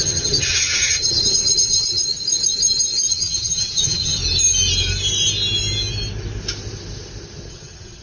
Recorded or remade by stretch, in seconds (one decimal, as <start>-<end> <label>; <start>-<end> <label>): 0.0-2.0 remade; 2.0-3.1 recorded; 3.1-4.2 remade; 4.2-7.5 recorded; 7.5-8.0 remade